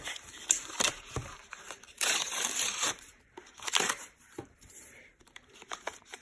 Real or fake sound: fake